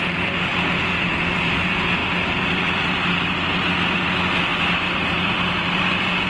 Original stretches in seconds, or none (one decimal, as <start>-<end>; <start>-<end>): 0.0-0.5; 1.6-4.5